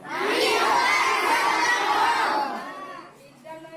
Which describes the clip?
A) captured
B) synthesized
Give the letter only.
A